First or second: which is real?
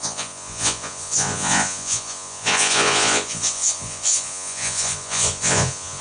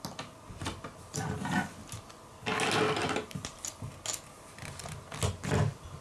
second